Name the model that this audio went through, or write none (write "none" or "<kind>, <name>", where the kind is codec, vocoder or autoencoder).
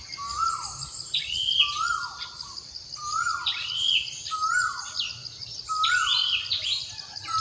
none